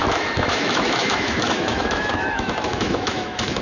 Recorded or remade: remade